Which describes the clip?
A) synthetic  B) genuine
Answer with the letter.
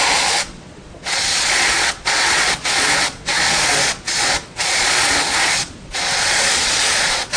A